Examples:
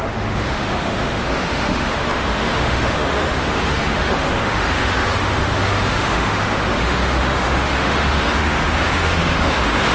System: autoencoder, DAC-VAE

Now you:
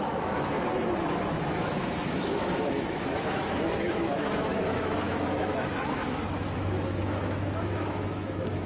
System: autoencoder, DAC-VAE